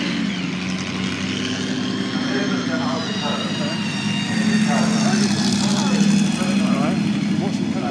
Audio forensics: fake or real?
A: real